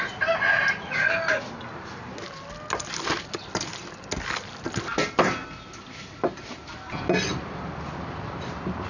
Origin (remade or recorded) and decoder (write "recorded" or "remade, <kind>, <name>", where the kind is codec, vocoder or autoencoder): recorded